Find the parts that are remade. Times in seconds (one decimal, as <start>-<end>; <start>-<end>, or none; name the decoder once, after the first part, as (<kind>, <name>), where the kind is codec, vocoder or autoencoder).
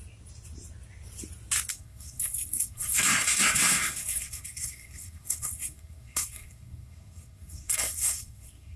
1.7-8.8 (codec, SNAC)